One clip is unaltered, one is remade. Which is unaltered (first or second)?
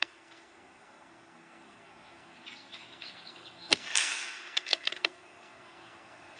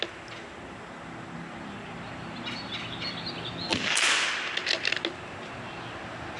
second